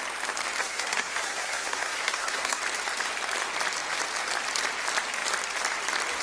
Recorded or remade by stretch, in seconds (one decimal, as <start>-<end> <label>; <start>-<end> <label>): 0.0-0.6 recorded; 0.6-2.6 remade; 2.6-6.2 recorded